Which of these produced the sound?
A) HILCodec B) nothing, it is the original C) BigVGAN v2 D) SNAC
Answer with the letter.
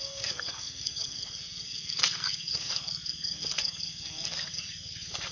D